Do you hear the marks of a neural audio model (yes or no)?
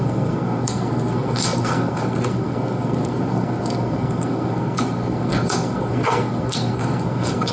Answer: yes